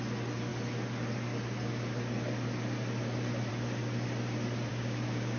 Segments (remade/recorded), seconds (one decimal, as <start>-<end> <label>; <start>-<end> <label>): 0.0-4.7 recorded; 4.7-5.4 remade